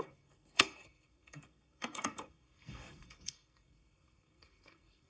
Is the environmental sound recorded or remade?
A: remade